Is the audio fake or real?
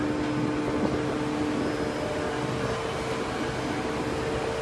real